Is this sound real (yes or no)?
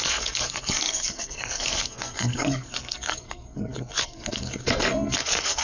no